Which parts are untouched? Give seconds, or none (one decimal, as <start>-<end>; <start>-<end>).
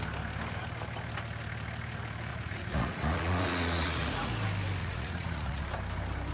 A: 0.0-2.3; 4.3-4.8; 5.6-6.3